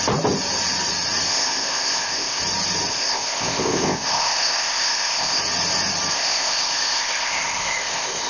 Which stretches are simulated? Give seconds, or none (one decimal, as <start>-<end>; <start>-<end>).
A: 1.3-2.4; 2.9-5.4; 6.1-8.3